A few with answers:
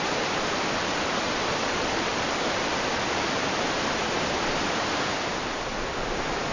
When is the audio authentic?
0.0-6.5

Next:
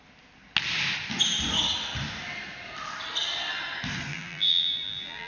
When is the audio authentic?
0.0-4.1

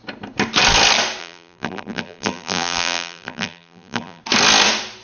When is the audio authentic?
0.0-1.2; 4.2-5.0

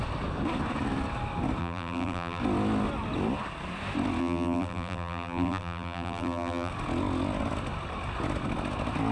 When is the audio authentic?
0.0-1.6; 2.4-4.2; 6.7-9.1

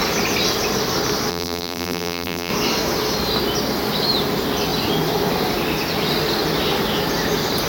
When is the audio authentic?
0.0-1.3; 2.5-7.7

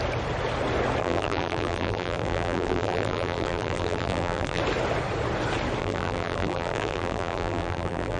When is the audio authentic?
0.0-1.0; 4.6-5.8

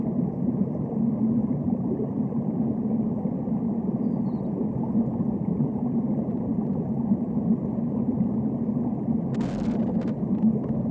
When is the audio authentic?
0.0-1.4; 2.5-5.7; 7.3-10.9

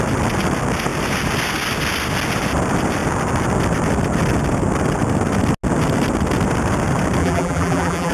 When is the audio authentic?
0.0-7.2